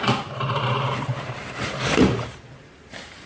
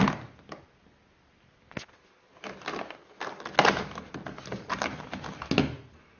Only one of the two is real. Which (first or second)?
second